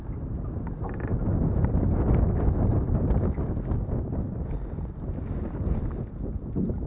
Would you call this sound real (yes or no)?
yes